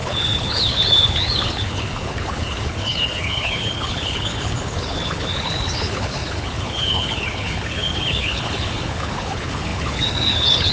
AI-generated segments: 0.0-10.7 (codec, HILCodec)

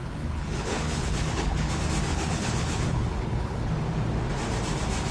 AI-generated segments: 0.0-1.7 (codec, HILCodec); 2.1-3.7

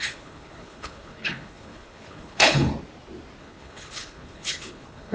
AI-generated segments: 0.0-2.7 (codec, HILCodec); 3.4-5.1

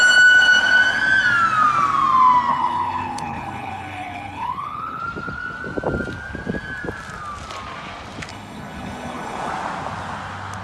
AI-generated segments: 2.5-5.0 (codec, HILCodec); 8.3-9.5

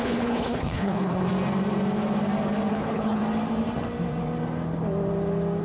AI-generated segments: 0.0-1.3 (codec, HILCodec); 2.7-3.2

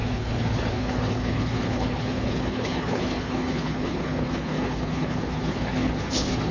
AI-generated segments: 0.0-6.5 (codec, HILCodec)

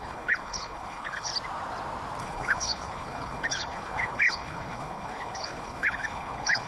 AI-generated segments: 0.0-1.3 (codec, HILCodec); 2.2-6.7